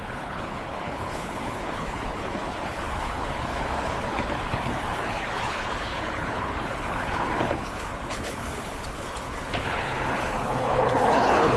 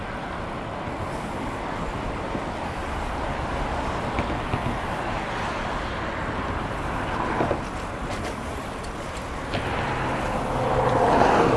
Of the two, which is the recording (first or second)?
second